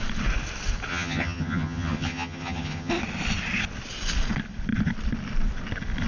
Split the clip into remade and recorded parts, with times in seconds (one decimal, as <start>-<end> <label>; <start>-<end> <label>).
0.0-0.9 recorded; 0.9-2.9 remade; 2.9-6.1 recorded